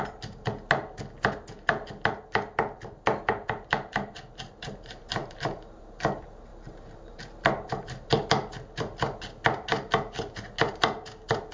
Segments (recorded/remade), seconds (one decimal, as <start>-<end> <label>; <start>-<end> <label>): 0.0-3.1 recorded; 3.1-5.8 remade; 5.8-6.5 recorded; 6.5-8.3 remade; 8.3-11.5 recorded